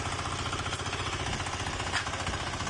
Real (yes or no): yes